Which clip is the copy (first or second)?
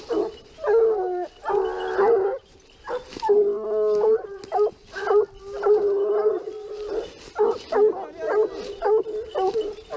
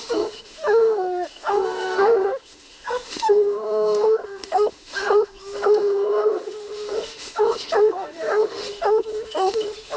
second